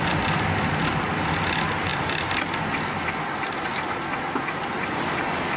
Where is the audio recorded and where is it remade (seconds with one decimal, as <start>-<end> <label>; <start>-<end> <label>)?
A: 0.0-5.6 recorded